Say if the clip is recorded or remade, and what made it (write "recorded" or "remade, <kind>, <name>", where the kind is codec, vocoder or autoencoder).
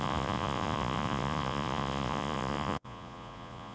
remade, vocoder, Vocos